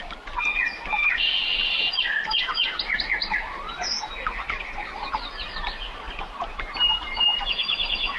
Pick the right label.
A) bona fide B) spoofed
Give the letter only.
A